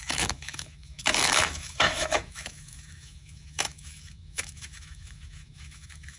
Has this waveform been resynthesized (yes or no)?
yes